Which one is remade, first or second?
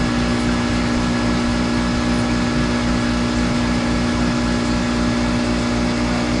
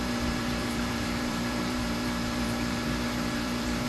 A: second